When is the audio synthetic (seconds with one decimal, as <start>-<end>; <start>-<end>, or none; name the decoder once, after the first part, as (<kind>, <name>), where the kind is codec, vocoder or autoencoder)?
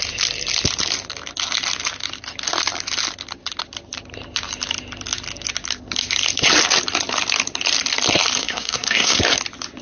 8.4-9.2 (codec, SNAC)